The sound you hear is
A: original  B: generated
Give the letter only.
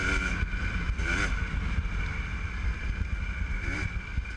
A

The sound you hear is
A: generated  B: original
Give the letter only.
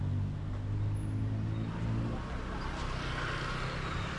B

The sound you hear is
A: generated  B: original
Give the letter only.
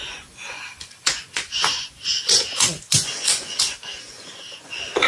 A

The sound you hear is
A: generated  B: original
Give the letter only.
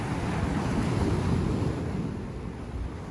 B